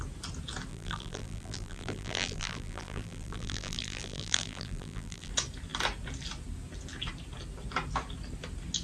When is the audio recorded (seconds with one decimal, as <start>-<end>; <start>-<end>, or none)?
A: 0.0-0.7; 5.3-8.8